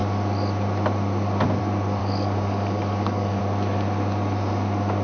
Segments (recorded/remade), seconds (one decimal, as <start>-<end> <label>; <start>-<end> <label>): 0.0-2.0 recorded; 2.0-3.4 remade; 3.4-5.0 recorded